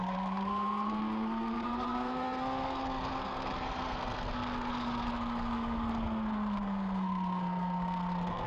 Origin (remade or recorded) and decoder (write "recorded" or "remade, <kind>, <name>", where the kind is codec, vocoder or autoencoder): remade, codec, SNAC